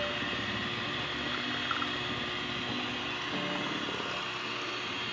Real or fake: real